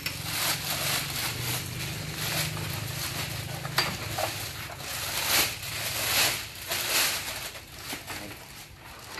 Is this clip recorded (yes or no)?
yes